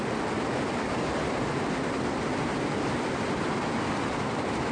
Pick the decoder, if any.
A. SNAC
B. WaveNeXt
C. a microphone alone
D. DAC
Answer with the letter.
C